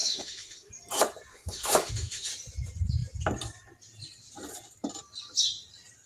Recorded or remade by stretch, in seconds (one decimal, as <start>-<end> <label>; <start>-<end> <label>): 0.0-0.7 remade; 0.7-1.3 recorded; 1.3-2.3 remade; 2.3-6.1 recorded